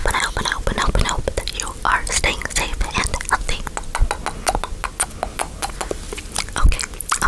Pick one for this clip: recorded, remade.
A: recorded